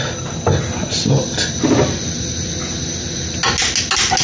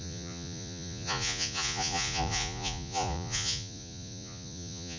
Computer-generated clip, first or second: second